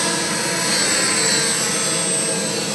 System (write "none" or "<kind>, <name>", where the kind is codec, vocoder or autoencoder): none